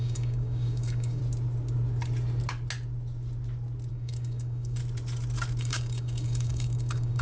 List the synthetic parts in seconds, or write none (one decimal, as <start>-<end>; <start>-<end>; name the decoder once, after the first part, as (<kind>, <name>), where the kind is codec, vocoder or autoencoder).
0.0-1.2 (codec, DAC); 3.9-4.8; 5.6-7.2